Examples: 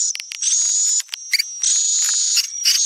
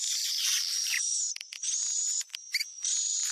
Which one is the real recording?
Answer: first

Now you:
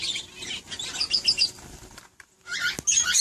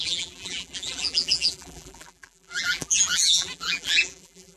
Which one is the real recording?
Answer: first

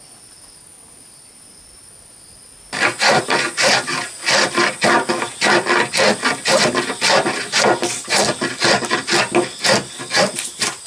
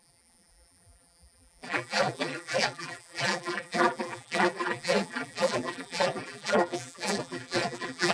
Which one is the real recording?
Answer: first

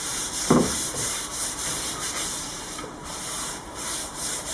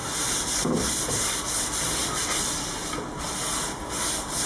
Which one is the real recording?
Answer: second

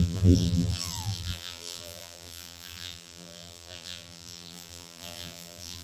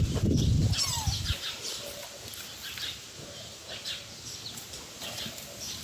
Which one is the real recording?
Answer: second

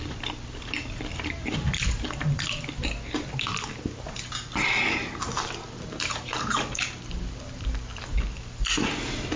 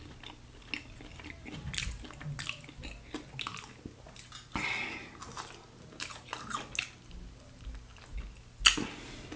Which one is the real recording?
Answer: second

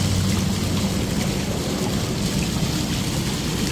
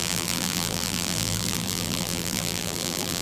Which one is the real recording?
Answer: first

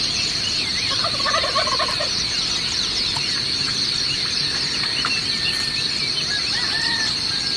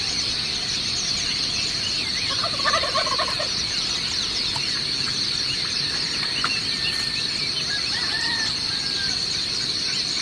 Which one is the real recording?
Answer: first